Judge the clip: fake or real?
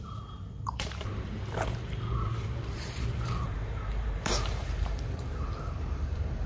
fake